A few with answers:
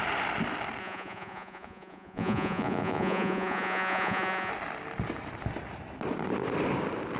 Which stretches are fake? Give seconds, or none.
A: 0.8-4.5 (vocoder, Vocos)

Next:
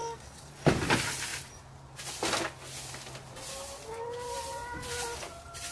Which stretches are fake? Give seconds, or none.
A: 0.0-0.5 (codec, SNAC)